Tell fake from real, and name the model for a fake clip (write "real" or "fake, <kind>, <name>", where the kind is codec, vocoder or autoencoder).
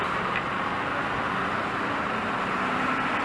real